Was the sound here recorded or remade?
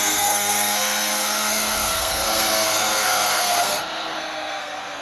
remade